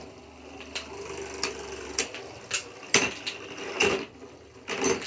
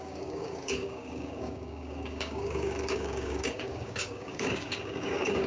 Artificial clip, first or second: second